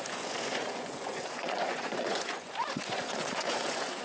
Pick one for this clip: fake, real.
fake